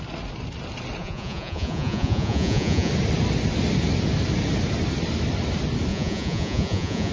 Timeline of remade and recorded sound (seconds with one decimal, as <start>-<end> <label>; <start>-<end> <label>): 0.0-1.0 recorded; 1.0-2.9 remade; 2.9-5.9 recorded; 5.9-7.1 remade